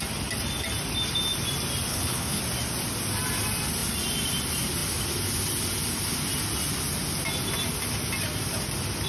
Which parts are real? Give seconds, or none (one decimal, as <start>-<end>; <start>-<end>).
0.0-1.9; 2.4-9.1